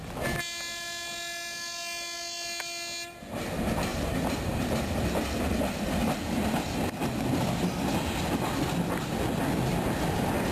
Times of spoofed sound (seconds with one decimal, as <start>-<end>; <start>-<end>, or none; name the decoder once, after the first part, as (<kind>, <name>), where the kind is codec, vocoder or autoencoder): 3.9-4.9 (vocoder, BigVGAN v2)